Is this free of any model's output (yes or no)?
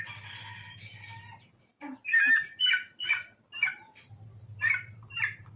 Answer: yes